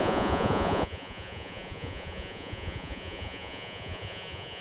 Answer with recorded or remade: remade